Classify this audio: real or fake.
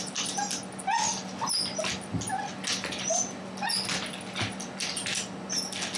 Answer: real